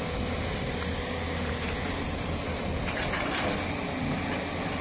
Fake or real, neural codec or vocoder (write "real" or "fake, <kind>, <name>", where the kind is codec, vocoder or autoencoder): real